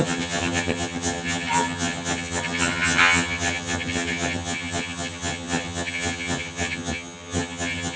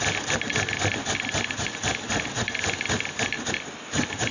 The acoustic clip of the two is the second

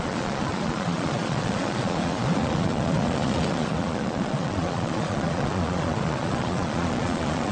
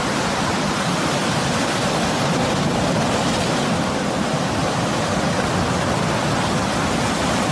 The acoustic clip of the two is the second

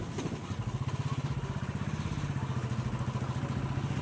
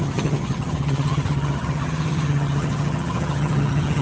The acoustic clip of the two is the first